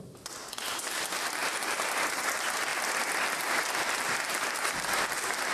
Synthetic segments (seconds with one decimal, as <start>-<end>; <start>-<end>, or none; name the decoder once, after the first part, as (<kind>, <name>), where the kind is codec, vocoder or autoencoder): 1.4-2.2 (vocoder, BigVGAN v2)